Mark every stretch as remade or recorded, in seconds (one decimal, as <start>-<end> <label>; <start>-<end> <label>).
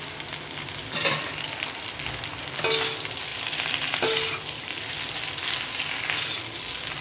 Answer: 0.0-7.0 recorded